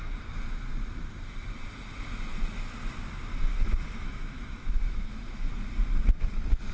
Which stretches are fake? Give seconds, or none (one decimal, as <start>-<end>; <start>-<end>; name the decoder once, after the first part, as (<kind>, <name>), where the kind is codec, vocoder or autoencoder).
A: 3.5-5.5 (autoencoder, DAC-VAE)